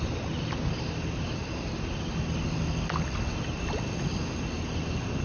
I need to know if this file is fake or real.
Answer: real